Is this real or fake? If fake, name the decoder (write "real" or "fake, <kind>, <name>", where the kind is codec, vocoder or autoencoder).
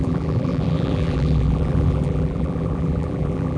fake, vocoder, BigVGAN v2